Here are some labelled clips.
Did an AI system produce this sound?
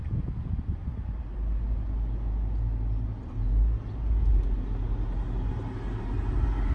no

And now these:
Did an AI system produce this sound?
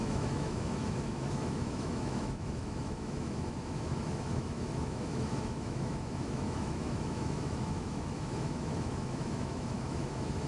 yes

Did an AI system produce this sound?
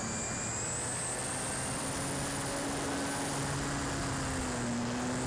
no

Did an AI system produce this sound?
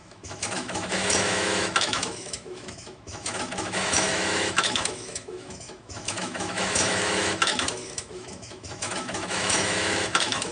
yes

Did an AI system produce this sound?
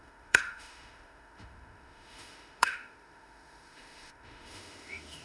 yes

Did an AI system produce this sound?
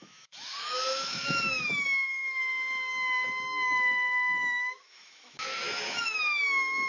yes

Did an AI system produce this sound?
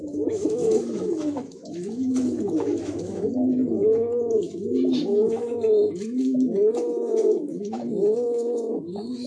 yes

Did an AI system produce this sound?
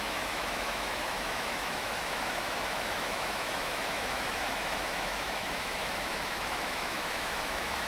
yes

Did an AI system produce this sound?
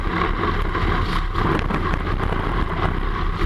no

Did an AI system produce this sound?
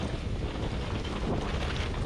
no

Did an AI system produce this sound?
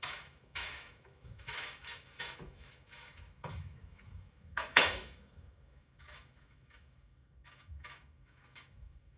yes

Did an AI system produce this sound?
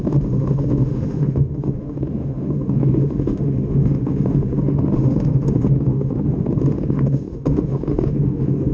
yes